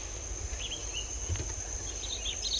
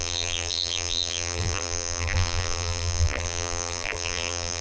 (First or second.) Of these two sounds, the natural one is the first